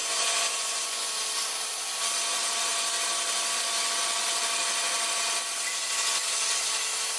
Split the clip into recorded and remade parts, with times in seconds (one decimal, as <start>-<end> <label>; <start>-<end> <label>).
0.0-1.1 remade; 1.1-7.2 recorded